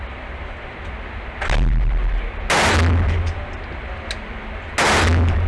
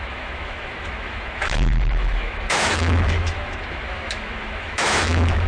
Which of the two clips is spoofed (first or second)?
second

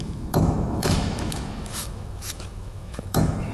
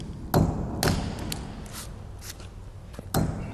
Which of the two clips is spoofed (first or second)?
first